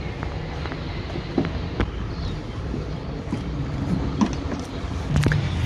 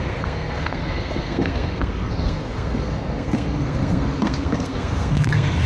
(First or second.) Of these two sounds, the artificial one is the second